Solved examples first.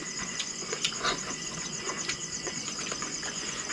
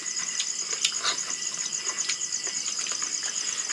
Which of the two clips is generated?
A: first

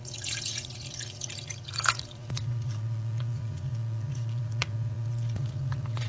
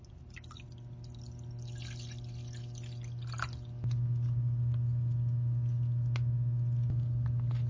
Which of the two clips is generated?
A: first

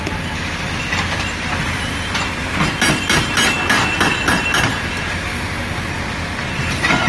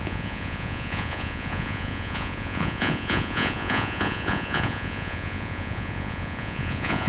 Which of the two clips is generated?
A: second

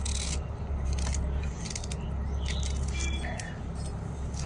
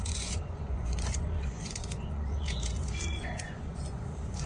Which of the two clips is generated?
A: second